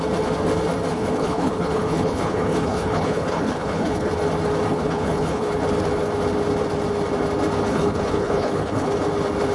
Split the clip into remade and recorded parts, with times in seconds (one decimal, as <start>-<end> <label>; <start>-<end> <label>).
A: 0.0-0.9 recorded; 0.9-4.1 remade; 4.1-4.7 recorded; 4.7-5.5 remade; 5.5-7.7 recorded; 7.7-8.9 remade; 8.9-9.5 recorded